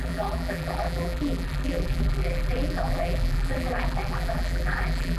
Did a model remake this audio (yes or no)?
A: yes